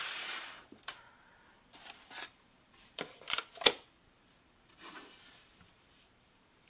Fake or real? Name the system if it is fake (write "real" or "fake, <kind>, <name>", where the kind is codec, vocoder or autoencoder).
fake, vocoder, BigVGAN v2